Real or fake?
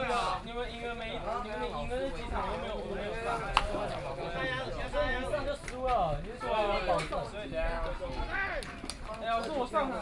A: real